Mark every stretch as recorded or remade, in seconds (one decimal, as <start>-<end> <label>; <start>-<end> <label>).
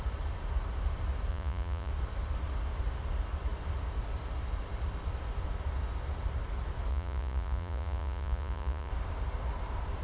0.0-1.3 recorded; 1.3-1.9 remade; 1.9-6.9 recorded; 6.9-8.9 remade; 8.9-10.0 recorded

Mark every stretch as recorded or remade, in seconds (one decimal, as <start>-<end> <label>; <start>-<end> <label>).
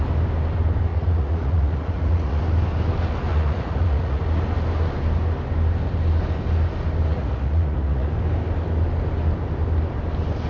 0.0-0.9 recorded; 0.9-2.4 remade; 2.4-3.3 recorded; 3.3-4.2 remade; 4.2-7.1 recorded; 7.1-8.1 remade; 8.1-10.5 recorded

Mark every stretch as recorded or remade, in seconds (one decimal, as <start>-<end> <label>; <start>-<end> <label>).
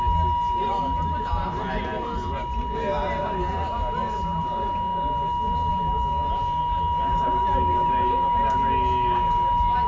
0.0-9.9 recorded